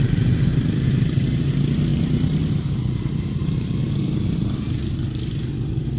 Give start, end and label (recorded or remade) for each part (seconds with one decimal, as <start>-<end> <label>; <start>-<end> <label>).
0.0-0.5 recorded; 0.5-1.5 remade; 1.5-1.9 recorded; 1.9-5.5 remade; 5.5-6.0 recorded